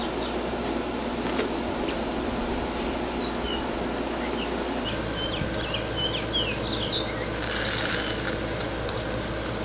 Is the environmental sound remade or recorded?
recorded